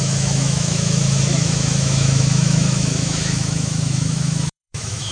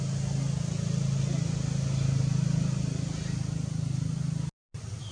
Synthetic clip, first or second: first